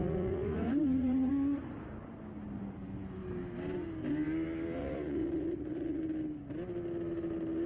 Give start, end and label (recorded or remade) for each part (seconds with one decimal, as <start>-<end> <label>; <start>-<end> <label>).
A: 0.0-1.3 remade; 1.3-4.8 recorded; 4.8-6.0 remade; 6.0-7.7 recorded